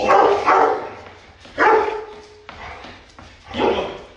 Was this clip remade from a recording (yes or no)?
no